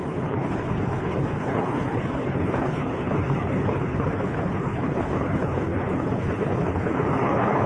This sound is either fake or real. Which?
fake